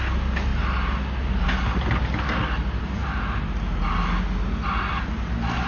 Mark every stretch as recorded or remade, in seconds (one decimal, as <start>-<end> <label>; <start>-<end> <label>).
0.0-5.7 recorded